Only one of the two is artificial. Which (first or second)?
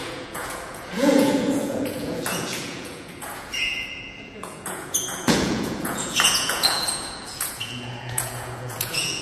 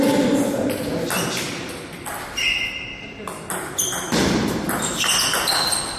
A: first